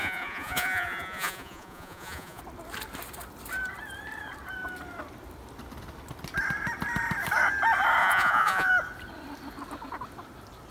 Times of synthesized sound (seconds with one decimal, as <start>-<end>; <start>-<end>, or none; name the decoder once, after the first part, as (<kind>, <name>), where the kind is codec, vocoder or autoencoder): 0.0-2.4 (vocoder, Vocos); 8.0-8.7